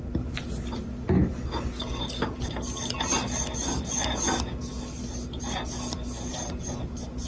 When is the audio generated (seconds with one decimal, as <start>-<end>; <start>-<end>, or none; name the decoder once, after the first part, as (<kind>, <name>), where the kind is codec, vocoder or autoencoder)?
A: 6.3-7.3 (vocoder, BigVGAN v2)